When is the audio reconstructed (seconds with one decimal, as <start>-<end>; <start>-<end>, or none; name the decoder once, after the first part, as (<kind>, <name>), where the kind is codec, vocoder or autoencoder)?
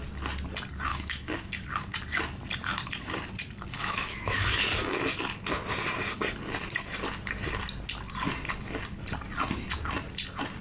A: 0.9-1.5 (autoencoder, DAC-VAE); 3.8-4.6